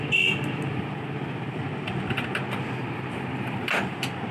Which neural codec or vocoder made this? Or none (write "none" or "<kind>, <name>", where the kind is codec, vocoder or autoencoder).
none